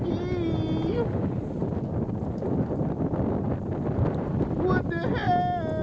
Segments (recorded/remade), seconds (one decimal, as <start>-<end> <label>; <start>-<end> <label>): 0.0-5.8 recorded

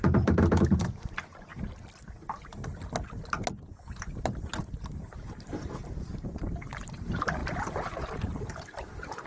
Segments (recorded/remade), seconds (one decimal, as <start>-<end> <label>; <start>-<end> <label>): 0.0-1.5 remade; 1.5-4.6 recorded; 4.6-9.3 remade

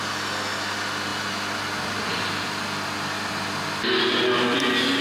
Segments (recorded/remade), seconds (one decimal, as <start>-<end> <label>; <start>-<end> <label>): 0.0-5.0 recorded

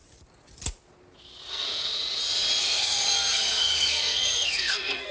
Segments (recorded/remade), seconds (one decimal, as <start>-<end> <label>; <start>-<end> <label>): 0.0-1.5 recorded; 1.5-1.9 remade; 1.9-2.6 recorded; 2.6-5.1 remade